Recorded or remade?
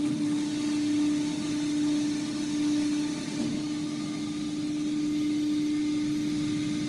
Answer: recorded